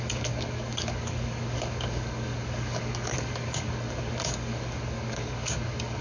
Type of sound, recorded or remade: remade